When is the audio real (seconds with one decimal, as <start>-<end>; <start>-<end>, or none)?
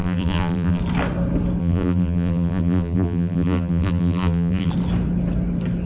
0.8-1.6; 4.7-5.9